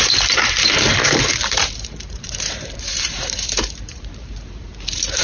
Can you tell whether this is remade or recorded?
remade